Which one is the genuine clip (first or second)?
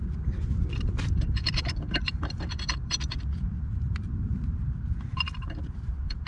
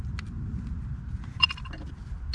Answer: second